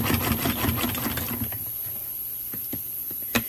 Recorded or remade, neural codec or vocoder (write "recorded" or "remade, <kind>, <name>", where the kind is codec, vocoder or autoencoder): recorded